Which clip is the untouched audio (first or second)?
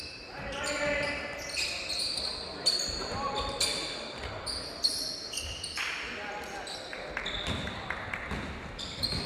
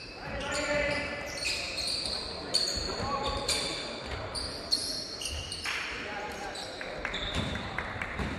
first